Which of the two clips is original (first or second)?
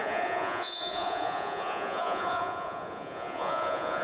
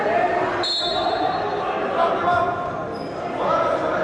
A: second